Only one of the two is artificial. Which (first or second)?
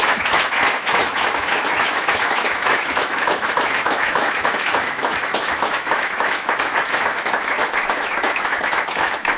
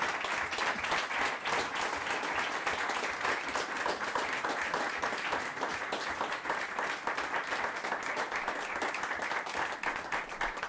first